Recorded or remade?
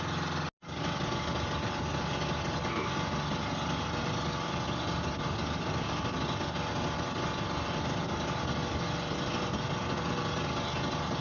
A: recorded